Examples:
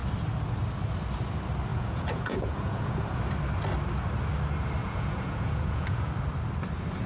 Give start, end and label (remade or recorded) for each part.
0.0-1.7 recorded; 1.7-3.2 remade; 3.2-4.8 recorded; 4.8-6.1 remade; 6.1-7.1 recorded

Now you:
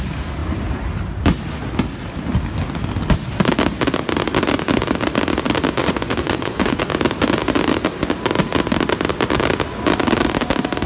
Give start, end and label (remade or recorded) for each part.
0.0-5.8 recorded; 5.8-6.8 remade; 6.8-10.9 recorded